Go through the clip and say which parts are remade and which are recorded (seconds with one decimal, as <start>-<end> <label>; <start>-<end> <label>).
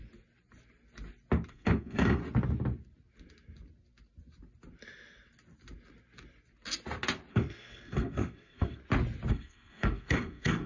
0.0-1.5 recorded; 1.5-2.2 remade; 2.2-7.3 recorded; 7.3-8.8 remade; 8.8-9.3 recorded; 9.3-10.7 remade